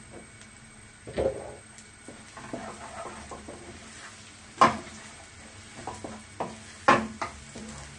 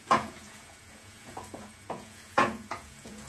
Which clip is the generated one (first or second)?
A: second